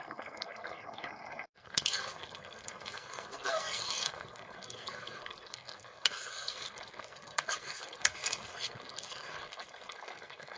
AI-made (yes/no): yes